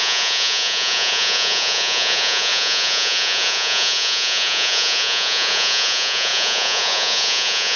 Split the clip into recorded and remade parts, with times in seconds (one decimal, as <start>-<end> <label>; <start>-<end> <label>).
0.0-7.8 remade